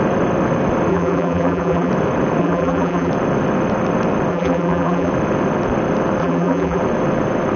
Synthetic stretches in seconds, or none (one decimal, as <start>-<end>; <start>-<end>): 0.9-1.9; 2.4-3.1; 4.3-5.1; 6.2-6.8